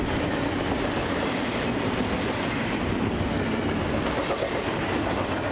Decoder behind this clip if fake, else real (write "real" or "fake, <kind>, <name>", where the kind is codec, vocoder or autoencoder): real